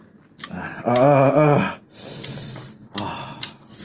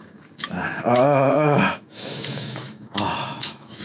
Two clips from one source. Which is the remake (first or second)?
second